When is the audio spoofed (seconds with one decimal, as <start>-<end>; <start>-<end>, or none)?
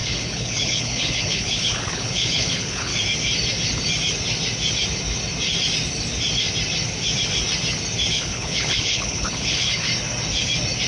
0.0-2.9; 8.1-9.9